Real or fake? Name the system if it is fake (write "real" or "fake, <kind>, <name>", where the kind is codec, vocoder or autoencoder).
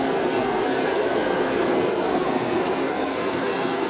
fake, codec, SNAC